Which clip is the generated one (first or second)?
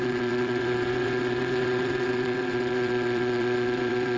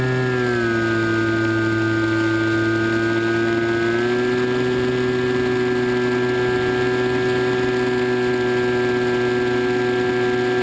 first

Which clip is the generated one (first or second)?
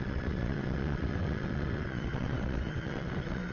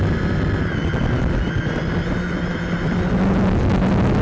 first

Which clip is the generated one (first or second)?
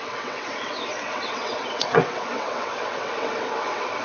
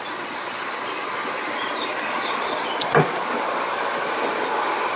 first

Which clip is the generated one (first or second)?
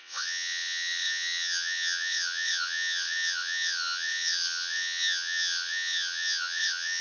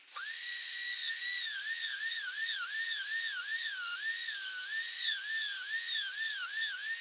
first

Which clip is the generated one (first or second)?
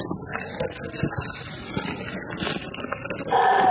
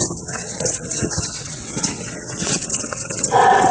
second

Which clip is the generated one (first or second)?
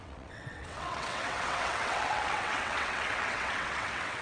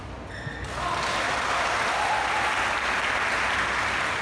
first